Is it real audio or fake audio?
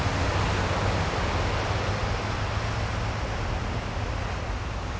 real